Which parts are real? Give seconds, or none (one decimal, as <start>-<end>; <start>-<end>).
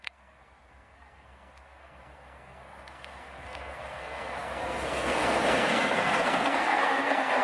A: none